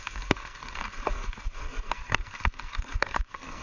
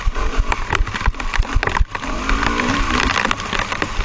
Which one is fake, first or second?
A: first